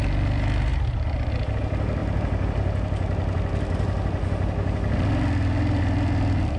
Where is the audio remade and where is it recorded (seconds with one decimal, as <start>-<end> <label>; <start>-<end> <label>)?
0.0-6.6 recorded